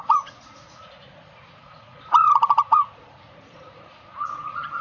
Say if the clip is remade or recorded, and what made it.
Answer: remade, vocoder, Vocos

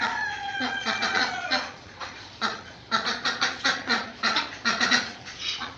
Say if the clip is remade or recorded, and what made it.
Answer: remade, vocoder, Vocos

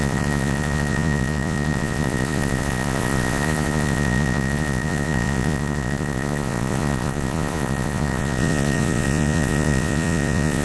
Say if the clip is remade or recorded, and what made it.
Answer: remade, vocoder, Vocos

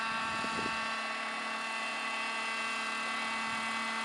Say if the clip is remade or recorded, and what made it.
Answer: recorded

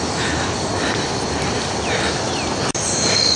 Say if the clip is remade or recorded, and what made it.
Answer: recorded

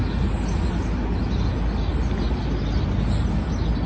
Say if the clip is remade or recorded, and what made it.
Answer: recorded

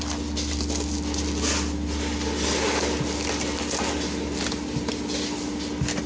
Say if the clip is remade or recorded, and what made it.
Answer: recorded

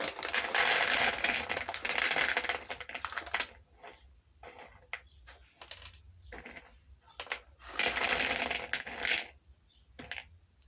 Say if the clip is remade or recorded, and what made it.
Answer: recorded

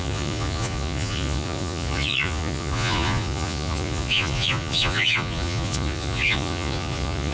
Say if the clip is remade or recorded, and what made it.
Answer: remade, vocoder, Vocos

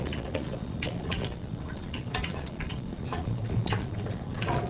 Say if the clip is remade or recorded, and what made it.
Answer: remade, vocoder, Vocos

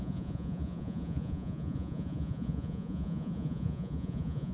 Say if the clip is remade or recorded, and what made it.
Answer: remade, vocoder, Vocos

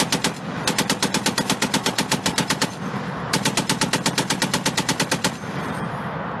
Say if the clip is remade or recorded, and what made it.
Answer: recorded